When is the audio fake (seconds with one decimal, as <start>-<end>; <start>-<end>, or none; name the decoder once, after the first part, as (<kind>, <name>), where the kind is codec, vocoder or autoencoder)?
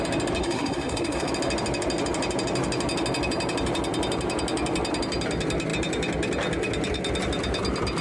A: 0.4-1.3 (codec, SNAC)